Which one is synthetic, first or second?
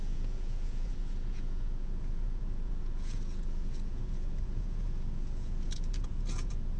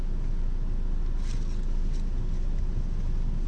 first